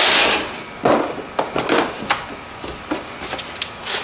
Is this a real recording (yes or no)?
yes